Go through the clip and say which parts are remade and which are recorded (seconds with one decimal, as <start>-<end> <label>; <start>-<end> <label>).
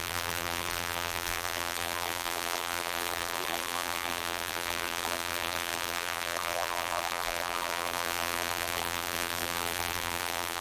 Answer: 0.0-10.6 remade